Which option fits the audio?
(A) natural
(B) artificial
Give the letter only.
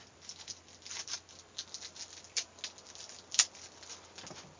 A